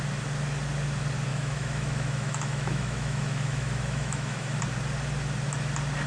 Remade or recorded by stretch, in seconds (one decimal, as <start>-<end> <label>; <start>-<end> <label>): 0.0-1.3 recorded; 1.3-4.6 remade; 4.6-6.1 recorded